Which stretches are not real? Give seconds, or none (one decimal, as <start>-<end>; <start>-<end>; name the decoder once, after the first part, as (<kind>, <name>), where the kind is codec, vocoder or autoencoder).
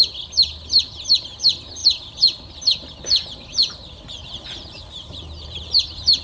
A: 1.8-2.5 (vocoder, BigVGAN v2); 4.2-6.2